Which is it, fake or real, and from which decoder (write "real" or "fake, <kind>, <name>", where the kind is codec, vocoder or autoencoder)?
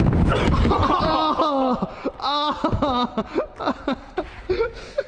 real